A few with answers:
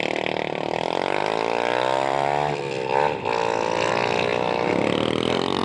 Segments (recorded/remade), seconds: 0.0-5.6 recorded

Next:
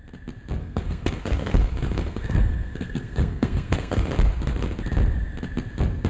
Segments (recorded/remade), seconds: 0.0-0.6 recorded; 0.6-4.1 remade; 4.1-6.1 recorded

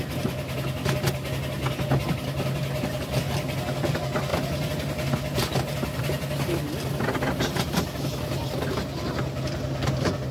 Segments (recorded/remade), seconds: 0.0-10.3 recorded

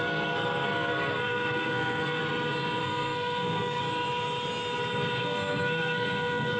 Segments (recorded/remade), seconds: 0.0-2.2 remade; 2.2-2.8 recorded; 2.8-3.8 remade; 3.8-5.2 recorded; 5.2-6.6 remade

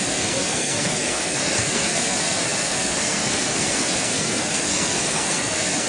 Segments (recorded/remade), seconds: 0.0-5.9 remade